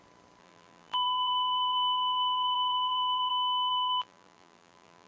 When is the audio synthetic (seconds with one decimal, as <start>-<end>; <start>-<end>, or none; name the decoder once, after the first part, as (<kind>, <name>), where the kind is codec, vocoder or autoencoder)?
0.4-3.3 (vocoder, BigVGAN v2); 3.7-5.1